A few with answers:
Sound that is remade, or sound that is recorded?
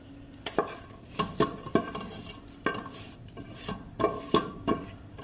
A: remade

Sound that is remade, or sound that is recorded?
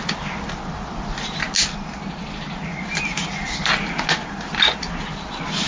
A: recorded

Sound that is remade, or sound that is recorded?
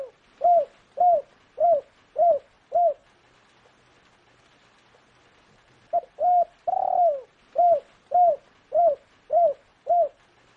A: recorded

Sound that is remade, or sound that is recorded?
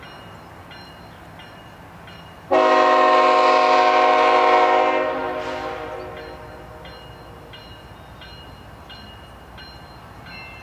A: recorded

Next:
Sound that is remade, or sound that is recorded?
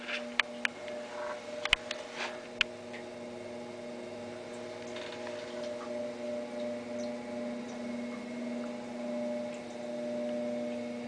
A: recorded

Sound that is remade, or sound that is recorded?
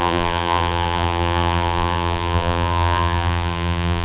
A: remade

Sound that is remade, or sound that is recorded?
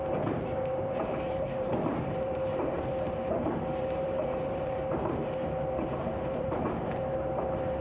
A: remade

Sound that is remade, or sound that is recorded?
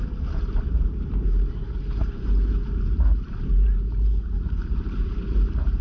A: remade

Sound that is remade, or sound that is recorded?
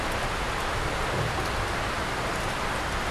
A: recorded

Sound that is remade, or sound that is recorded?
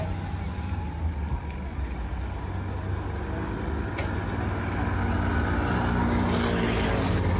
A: recorded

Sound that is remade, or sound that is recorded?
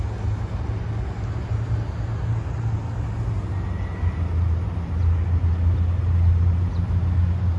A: recorded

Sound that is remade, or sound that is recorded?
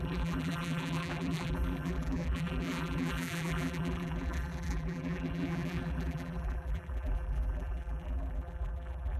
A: remade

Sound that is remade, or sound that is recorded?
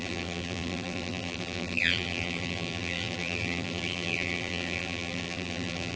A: remade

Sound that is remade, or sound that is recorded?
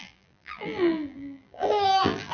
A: remade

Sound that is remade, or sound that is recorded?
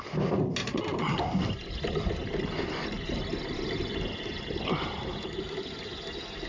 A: recorded